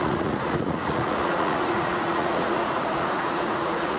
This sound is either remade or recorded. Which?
remade